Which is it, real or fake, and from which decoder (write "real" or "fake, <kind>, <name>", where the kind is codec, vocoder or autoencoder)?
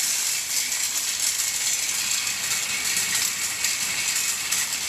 real